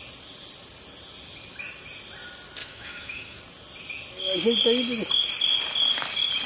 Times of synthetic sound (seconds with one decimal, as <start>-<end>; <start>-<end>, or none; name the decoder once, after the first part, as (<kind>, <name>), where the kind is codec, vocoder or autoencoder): 2.6-3.4 (autoencoder, DAC-VAE)